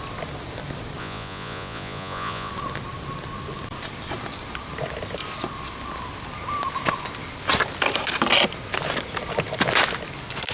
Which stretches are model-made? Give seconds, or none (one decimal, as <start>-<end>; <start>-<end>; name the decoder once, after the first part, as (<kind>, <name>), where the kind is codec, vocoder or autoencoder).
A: 1.0-2.5 (vocoder, Vocos)